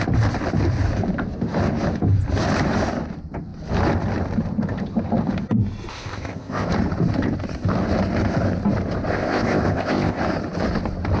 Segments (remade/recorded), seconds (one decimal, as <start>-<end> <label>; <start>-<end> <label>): 0.0-5.9 recorded; 5.9-6.7 remade; 6.7-9.1 recorded; 9.1-10.2 remade; 10.2-11.2 recorded